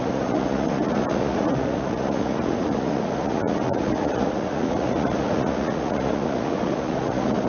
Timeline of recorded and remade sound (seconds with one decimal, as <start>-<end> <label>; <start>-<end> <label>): 0.0-7.5 remade